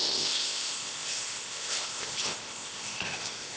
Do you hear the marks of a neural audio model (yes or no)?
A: yes